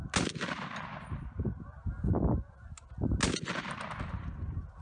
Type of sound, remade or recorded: recorded